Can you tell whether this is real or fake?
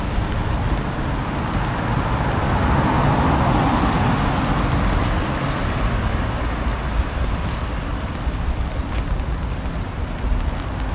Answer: real